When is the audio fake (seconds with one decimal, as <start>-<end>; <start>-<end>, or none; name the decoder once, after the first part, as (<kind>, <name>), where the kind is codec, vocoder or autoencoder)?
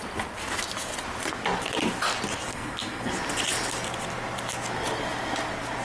2.5-3.1 (codec, SNAC)